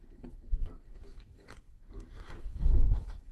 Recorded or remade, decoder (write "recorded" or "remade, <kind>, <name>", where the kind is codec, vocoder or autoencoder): remade, codec, SNAC